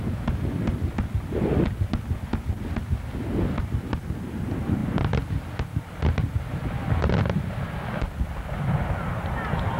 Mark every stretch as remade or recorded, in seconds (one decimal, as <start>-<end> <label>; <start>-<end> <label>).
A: 0.0-9.8 recorded